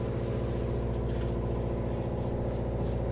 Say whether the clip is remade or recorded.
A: recorded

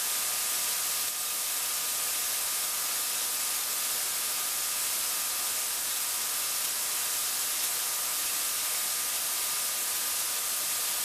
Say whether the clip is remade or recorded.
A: recorded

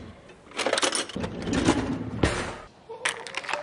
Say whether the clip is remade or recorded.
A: recorded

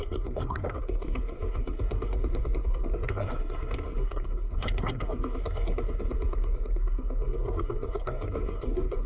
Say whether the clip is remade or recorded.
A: remade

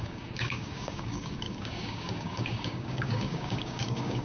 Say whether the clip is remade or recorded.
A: remade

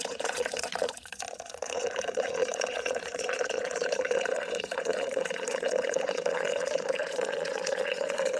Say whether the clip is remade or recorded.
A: remade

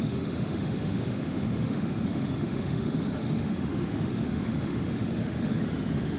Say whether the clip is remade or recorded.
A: remade